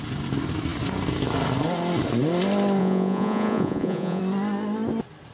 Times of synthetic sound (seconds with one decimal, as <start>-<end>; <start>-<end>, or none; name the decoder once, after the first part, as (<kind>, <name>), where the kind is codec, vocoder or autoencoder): 2.8-4.2 (vocoder, Vocos)